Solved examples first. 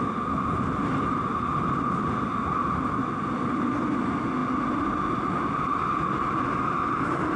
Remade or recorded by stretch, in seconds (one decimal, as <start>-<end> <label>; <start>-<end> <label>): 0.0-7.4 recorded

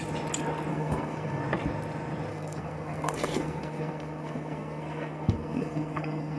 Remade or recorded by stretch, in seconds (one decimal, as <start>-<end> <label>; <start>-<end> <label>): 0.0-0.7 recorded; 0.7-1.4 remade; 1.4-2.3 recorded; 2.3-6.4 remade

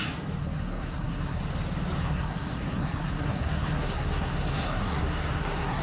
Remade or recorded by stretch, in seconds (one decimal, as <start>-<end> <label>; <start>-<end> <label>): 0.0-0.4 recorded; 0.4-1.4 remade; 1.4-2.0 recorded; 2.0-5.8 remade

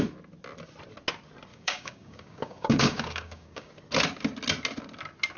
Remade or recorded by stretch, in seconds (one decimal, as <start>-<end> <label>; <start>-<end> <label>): 0.0-1.5 recorded; 1.5-3.7 remade; 3.7-5.4 recorded